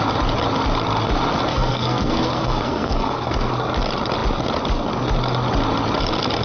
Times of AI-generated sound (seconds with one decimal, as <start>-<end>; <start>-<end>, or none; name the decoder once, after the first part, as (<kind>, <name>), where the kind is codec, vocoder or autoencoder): 1.5-3.5 (codec, SNAC)